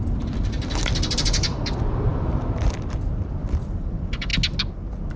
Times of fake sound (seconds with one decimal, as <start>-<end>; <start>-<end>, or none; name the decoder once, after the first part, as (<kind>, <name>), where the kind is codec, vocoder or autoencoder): 0.0-4.3 (vocoder, BigVGAN v2)